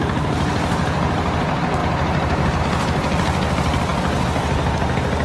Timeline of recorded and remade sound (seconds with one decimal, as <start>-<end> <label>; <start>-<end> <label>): 0.0-5.2 recorded